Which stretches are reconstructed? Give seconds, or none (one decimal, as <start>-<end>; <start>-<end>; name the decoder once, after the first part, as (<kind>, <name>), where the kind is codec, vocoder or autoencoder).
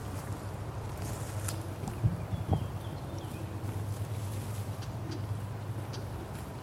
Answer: 0.0-1.3 (vocoder, BigVGAN v2); 2.1-3.4